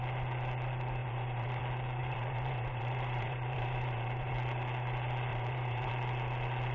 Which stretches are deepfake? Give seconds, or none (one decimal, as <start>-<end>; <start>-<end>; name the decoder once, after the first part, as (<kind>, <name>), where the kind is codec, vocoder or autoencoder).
1.0-1.6 (vocoder, BigVGAN v2); 2.0-4.3; 5.3-5.9